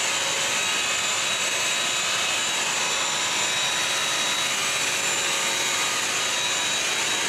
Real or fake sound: real